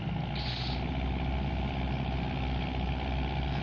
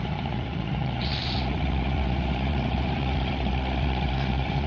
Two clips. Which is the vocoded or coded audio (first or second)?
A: second